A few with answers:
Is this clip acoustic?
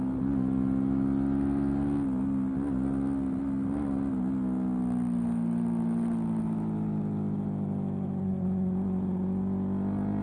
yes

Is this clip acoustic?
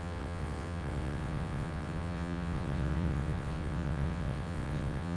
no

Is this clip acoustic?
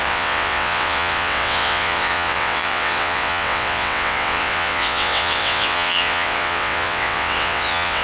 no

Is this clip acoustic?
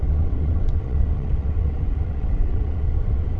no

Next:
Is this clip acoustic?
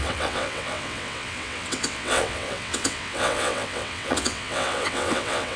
no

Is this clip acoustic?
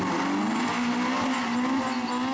yes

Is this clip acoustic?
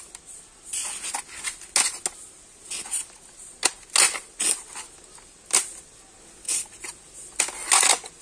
yes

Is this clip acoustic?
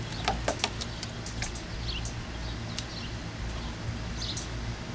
yes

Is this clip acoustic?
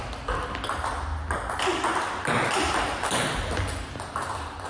yes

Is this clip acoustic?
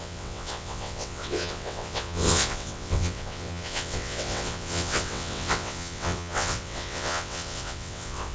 no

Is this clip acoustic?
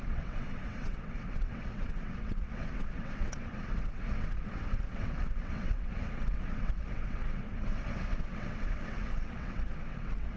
no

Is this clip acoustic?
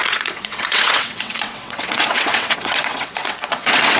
no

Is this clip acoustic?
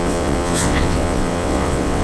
no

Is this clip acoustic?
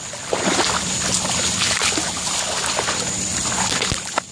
yes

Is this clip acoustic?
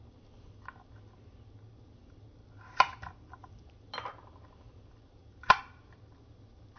yes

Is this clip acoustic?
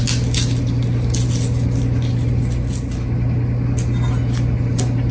yes